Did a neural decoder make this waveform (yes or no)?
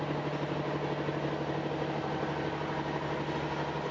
no